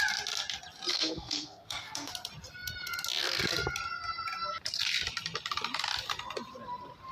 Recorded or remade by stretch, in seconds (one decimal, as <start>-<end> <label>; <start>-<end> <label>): 0.0-0.9 recorded; 0.9-2.1 remade; 2.1-7.1 recorded